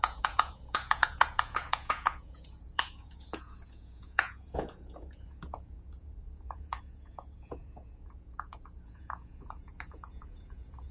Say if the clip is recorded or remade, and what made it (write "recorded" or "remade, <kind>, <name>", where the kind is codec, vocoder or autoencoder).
remade, vocoder, Vocos